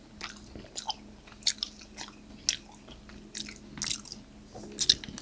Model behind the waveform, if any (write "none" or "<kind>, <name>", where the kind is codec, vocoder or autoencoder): none